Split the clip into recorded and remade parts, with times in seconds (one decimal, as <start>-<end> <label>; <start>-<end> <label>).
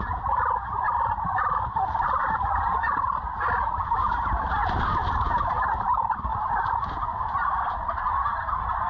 0.0-8.9 recorded